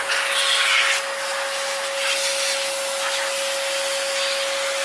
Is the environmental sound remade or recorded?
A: recorded